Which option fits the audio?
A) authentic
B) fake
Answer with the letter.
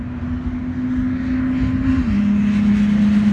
A